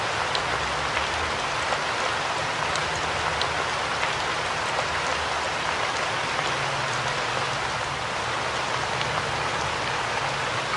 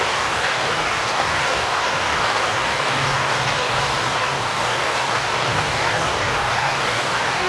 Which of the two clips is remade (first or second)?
second